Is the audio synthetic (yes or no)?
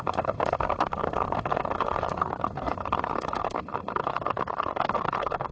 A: yes